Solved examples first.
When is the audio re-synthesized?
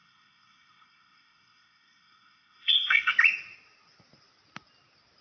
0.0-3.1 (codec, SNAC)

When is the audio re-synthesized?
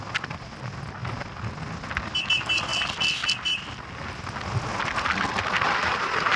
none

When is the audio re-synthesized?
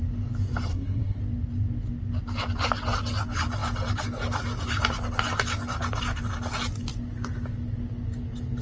0.7-1.2 (codec, SNAC)